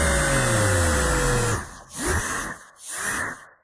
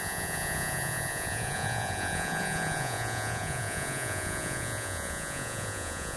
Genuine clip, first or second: first